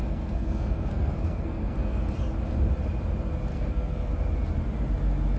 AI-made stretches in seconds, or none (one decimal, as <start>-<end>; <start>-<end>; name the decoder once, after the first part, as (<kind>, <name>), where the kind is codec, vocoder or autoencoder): 0.0-2.1 (codec, SNAC); 3.5-4.1